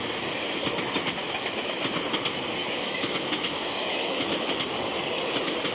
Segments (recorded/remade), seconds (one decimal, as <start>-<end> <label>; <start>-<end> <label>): 0.0-1.2 recorded; 1.2-1.8 remade; 1.8-2.6 recorded; 2.6-4.5 remade; 4.5-5.7 recorded